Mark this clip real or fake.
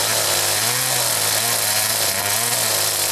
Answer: real